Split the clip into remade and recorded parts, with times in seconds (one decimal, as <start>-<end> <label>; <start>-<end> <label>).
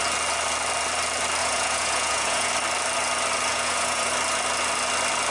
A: 0.0-1.4 recorded; 1.4-2.5 remade; 2.5-3.5 recorded; 3.5-4.1 remade; 4.1-5.3 recorded